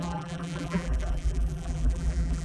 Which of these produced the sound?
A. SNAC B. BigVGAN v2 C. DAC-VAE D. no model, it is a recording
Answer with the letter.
B